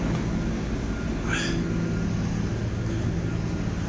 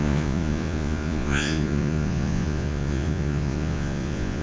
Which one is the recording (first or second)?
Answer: first